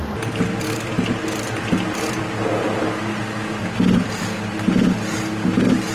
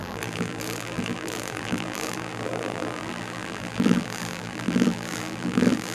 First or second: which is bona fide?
first